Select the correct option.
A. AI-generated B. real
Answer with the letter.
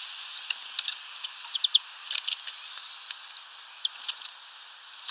B